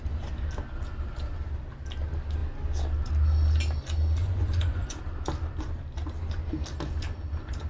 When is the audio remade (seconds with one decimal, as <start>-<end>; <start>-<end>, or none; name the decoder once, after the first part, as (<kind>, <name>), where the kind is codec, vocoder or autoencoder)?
4.2-5.0 (vocoder, Vocos)